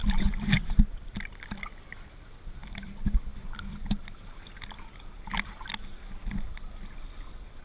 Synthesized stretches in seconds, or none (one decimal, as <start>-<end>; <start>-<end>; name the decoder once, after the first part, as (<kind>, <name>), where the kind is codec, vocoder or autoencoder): 0.0-0.8 (vocoder, BigVGAN v2)